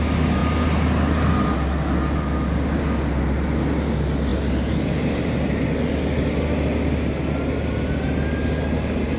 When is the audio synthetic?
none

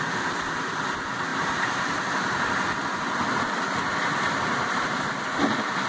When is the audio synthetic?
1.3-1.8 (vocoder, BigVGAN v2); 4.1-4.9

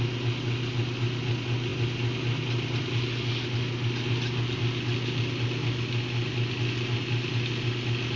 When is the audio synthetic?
none

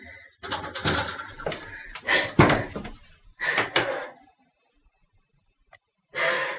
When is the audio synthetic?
0.8-4.7 (vocoder, BigVGAN v2)

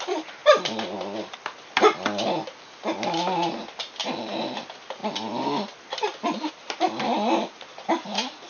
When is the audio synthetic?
none

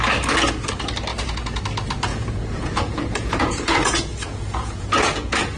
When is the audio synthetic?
1.1-1.6 (vocoder, Vocos); 2.1-5.6

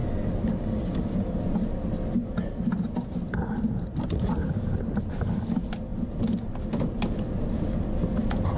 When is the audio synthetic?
none